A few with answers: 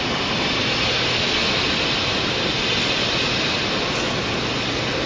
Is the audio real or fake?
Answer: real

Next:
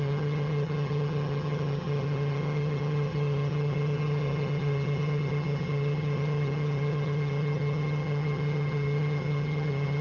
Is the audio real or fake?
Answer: fake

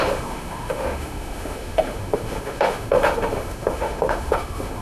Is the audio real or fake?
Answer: fake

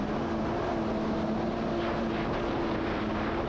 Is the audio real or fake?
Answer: real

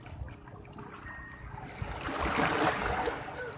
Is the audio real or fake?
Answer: real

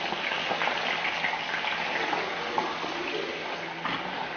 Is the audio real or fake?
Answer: real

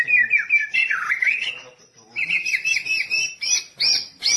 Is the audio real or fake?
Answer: fake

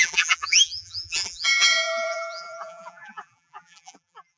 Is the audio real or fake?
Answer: fake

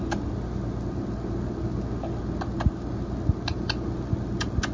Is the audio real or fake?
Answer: real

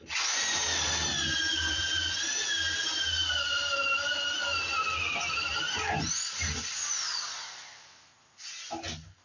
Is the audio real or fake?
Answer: real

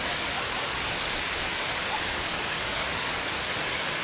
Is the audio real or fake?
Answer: fake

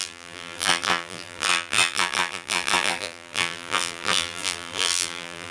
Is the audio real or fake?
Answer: fake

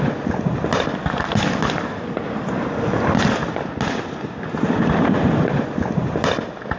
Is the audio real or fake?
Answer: real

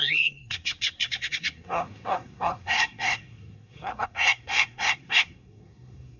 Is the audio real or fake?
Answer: fake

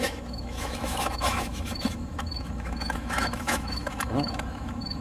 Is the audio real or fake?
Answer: fake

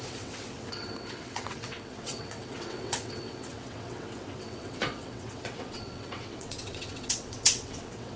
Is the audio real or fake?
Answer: fake